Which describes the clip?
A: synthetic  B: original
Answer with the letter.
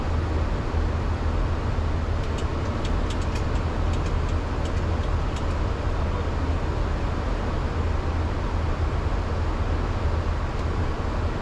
B